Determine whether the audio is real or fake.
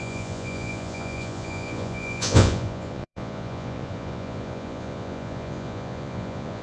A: fake